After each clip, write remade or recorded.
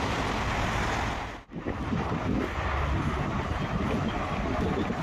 recorded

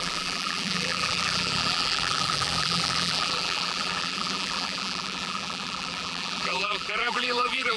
remade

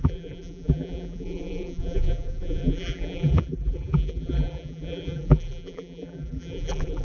remade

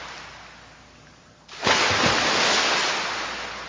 recorded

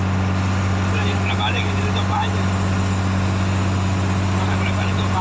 recorded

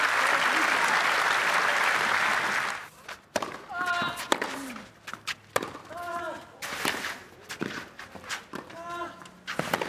recorded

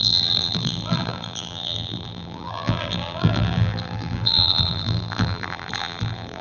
remade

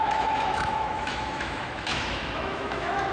remade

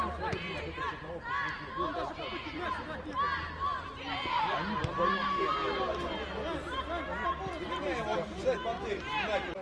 recorded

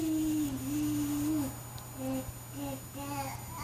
recorded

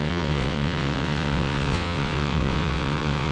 remade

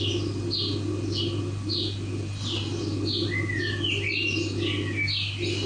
recorded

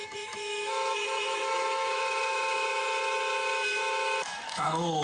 remade